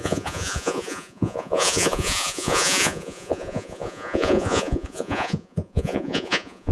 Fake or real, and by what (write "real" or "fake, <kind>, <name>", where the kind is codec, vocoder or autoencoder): fake, vocoder, Vocos